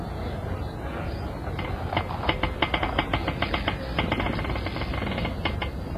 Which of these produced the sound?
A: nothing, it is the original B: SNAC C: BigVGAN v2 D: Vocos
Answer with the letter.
A